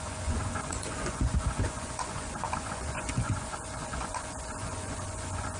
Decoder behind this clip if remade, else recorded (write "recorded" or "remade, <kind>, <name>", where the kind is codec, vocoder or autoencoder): remade, vocoder, Vocos